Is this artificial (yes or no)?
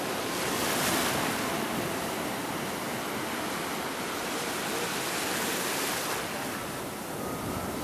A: no